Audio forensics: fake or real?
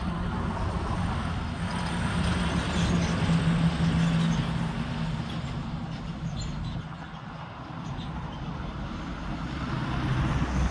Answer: real